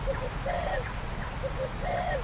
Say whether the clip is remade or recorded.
remade